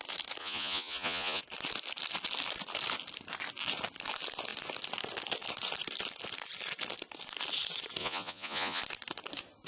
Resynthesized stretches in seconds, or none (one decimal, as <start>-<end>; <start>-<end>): 0.4-1.4; 8.0-8.8